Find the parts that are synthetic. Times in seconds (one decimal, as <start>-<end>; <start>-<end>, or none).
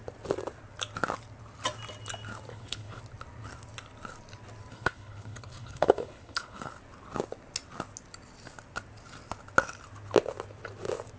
2.5-3.0; 4.7-6.7